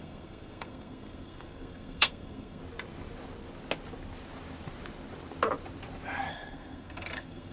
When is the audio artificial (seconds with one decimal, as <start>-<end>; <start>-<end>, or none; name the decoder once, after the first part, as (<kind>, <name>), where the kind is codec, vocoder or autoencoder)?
0.0-2.6 (codec, SNAC); 6.3-7.5